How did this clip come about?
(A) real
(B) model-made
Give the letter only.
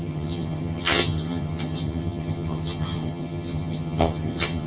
B